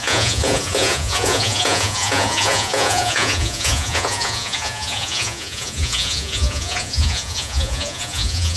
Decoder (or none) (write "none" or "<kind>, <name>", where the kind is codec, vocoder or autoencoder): vocoder, Vocos